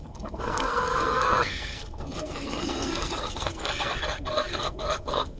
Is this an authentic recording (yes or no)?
no